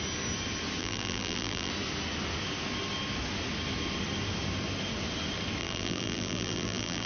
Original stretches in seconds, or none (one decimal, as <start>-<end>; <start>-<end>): 0.0-0.8; 1.7-5.6